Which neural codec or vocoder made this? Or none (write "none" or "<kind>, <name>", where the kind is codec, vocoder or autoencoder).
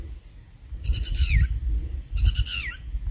none